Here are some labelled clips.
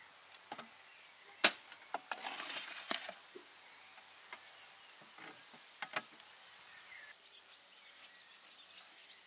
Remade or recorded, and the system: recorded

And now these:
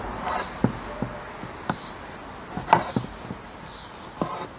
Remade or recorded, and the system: recorded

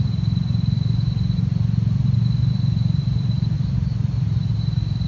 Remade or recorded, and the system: recorded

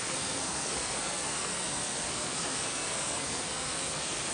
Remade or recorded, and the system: remade, codec, SNAC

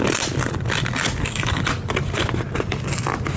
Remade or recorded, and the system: recorded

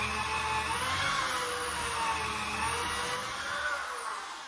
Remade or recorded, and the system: recorded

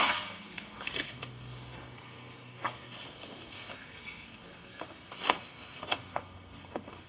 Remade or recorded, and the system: remade, codec, SNAC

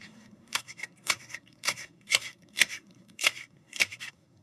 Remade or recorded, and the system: remade, codec, SNAC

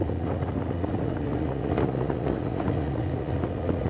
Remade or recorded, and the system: remade, vocoder, Vocos